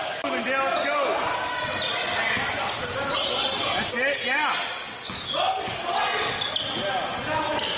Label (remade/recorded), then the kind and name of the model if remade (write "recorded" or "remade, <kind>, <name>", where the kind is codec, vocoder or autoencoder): recorded